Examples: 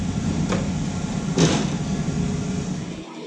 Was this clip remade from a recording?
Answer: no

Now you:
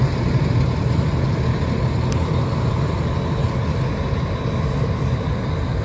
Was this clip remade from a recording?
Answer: no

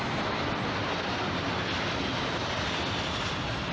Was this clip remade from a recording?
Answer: no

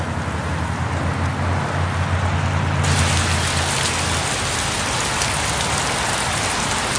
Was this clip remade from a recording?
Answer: no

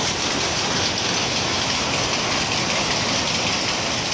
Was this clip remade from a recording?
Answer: no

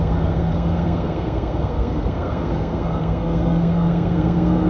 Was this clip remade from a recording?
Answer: yes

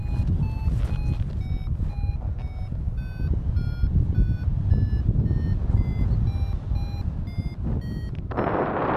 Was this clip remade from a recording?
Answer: no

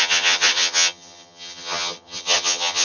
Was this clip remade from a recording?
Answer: yes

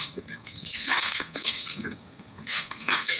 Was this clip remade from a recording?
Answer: yes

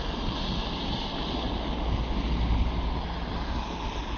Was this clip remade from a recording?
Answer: no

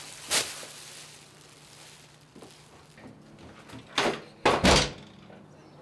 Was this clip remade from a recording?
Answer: no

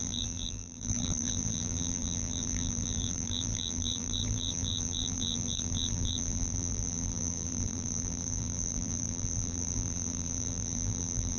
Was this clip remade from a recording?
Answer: yes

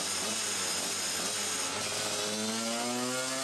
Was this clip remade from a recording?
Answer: no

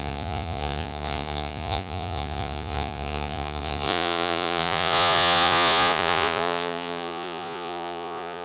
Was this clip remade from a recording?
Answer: yes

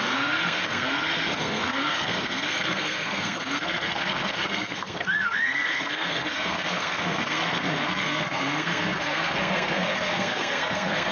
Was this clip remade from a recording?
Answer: yes